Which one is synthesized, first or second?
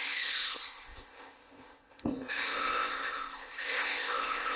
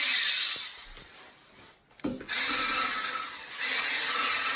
first